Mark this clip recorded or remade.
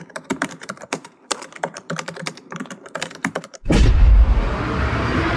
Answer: remade